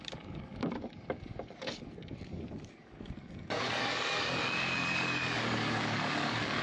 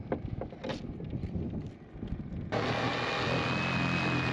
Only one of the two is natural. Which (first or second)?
second